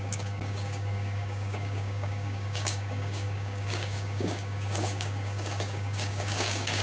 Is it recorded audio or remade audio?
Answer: remade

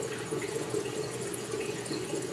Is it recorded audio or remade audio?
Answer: remade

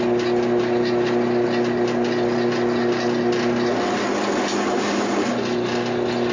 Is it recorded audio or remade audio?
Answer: recorded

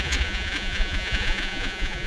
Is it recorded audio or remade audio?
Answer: remade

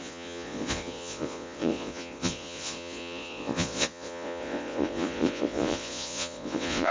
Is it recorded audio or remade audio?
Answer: remade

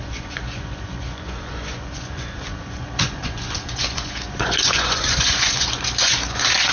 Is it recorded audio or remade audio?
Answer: remade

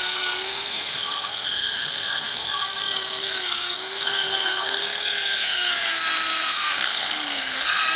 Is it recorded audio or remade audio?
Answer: remade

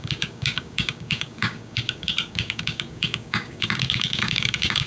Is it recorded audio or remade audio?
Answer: remade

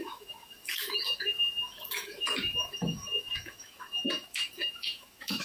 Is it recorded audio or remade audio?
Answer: remade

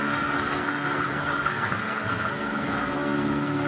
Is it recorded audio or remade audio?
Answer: remade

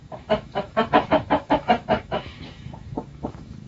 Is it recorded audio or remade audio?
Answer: remade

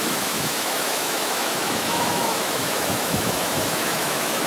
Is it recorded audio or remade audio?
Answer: remade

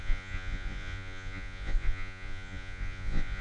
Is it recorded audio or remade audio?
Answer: remade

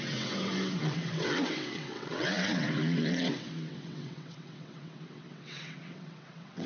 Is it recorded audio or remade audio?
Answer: remade